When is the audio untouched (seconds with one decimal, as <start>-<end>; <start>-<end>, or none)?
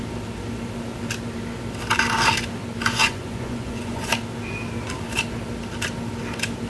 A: 0.0-3.0; 4.1-6.7